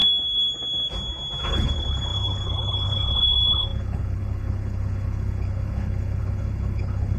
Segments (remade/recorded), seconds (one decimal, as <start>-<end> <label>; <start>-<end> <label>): 0.0-1.5 recorded; 1.5-7.2 remade